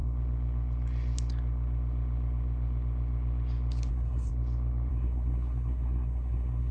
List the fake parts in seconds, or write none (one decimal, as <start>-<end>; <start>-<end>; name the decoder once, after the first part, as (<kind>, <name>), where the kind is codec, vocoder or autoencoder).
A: 3.9-4.3 (codec, SNAC); 4.9-6.7